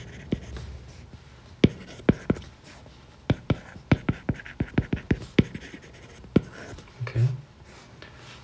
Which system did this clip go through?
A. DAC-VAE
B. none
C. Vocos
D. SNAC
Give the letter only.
B